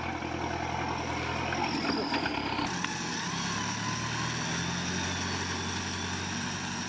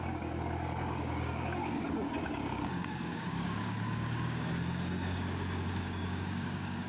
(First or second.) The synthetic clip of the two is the second